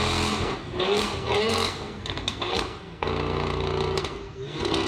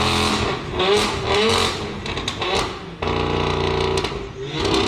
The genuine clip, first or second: second